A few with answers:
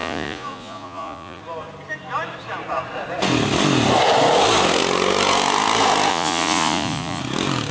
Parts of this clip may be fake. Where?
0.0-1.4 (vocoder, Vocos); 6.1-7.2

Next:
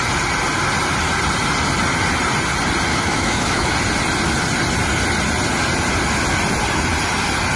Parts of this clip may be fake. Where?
2.9-3.7 (autoencoder, DAC-VAE)